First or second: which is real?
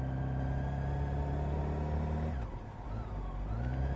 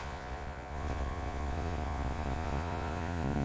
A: first